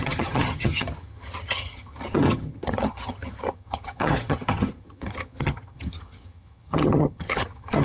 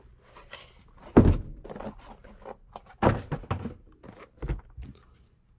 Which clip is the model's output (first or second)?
first